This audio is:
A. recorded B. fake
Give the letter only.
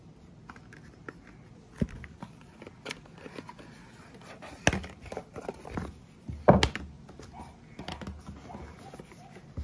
A